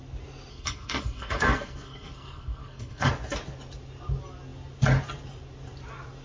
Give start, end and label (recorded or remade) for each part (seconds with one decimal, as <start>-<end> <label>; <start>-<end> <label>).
0.0-0.5 recorded; 0.5-3.1 remade; 3.1-6.2 recorded